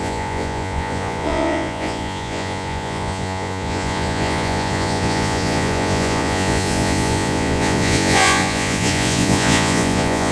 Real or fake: fake